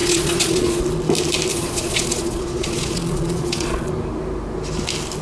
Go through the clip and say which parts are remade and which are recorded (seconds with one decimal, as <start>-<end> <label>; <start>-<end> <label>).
0.0-0.8 remade; 0.8-1.5 recorded; 1.5-3.9 remade; 3.9-5.2 recorded